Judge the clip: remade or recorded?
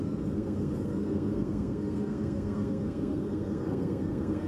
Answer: remade